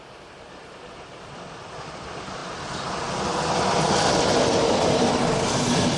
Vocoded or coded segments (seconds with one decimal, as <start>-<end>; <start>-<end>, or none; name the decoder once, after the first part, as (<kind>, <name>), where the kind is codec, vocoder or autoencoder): none